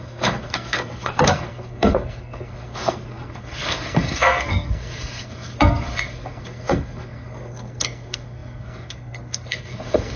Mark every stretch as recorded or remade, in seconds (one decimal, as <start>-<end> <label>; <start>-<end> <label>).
0.0-10.2 remade